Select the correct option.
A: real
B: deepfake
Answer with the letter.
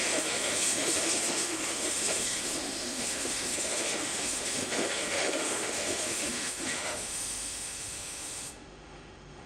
B